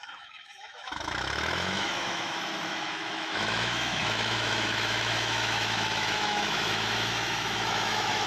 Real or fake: fake